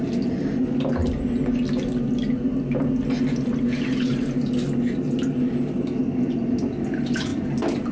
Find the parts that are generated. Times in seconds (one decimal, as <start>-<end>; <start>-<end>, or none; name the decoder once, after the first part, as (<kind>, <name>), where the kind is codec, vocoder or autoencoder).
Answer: none